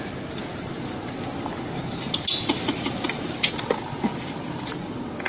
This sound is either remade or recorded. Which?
recorded